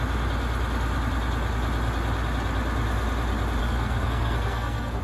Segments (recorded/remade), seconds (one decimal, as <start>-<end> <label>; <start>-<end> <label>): 0.0-3.6 recorded; 3.6-5.0 remade